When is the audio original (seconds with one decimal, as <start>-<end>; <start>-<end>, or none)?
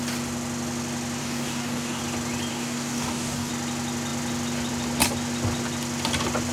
0.0-1.2; 2.0-2.5; 3.5-6.5